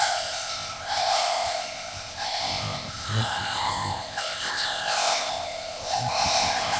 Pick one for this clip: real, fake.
fake